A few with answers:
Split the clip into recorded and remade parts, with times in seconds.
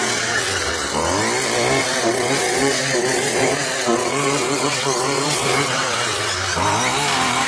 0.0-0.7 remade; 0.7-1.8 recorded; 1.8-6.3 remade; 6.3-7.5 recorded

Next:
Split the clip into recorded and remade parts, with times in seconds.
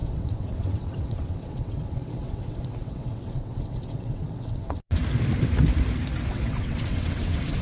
0.0-5.0 remade; 5.0-6.3 recorded; 6.3-7.6 remade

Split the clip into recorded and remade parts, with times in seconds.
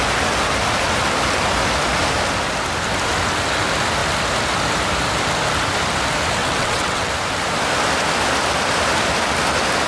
0.0-6.4 recorded; 6.4-7.1 remade; 7.1-9.9 recorded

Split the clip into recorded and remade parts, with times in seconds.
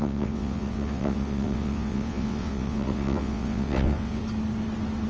0.0-4.2 remade; 4.2-5.1 recorded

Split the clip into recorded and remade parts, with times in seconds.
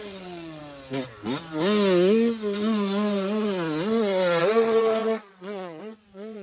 0.0-0.6 remade; 0.6-4.4 recorded; 4.4-6.4 remade